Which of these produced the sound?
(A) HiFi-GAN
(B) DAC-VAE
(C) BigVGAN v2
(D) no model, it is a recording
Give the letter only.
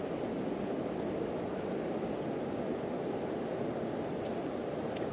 D